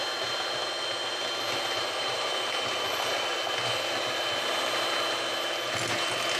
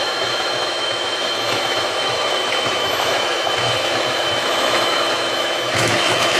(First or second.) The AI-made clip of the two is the second